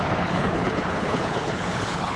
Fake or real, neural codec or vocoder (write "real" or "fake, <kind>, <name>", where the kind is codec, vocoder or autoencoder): fake, codec, HILCodec